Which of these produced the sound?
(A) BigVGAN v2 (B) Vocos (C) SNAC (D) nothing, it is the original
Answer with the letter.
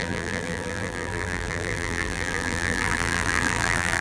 A